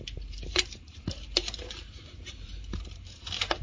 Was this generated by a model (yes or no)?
yes